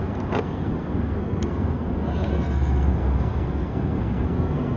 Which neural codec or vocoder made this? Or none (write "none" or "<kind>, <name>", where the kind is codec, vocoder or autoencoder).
codec, SNAC